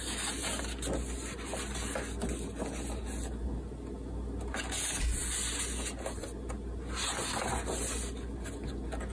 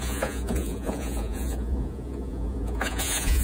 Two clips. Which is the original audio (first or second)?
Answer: first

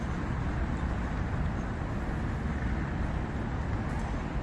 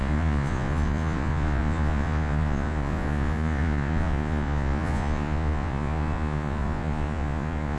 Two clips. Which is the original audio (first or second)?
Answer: first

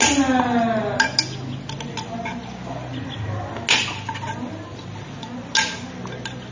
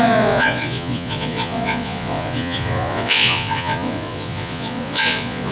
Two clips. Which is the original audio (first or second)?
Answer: first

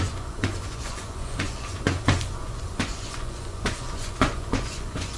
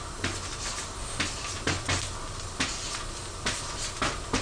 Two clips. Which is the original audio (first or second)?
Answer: second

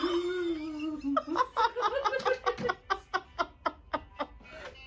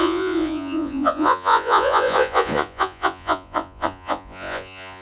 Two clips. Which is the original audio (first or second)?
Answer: first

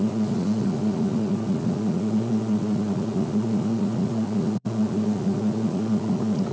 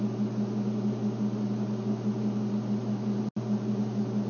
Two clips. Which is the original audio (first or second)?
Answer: second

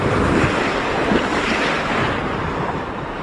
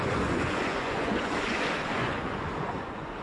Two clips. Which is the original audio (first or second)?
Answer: first